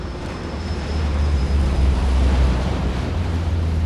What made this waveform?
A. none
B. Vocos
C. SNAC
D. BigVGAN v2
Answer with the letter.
D